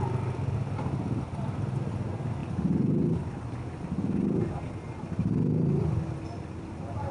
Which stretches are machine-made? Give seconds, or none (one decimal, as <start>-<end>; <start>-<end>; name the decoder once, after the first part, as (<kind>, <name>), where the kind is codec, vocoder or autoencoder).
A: none